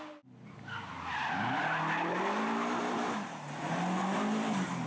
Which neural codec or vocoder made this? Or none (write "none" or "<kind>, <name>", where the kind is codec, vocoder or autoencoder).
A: none